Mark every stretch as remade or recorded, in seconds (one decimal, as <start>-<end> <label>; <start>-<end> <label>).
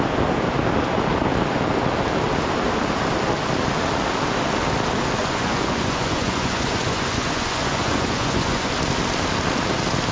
0.0-5.2 recorded; 5.2-8.7 remade; 8.7-10.1 recorded